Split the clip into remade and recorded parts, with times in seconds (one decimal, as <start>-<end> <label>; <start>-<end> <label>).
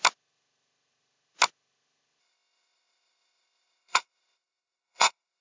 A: 0.0-2.2 recorded; 2.2-5.4 remade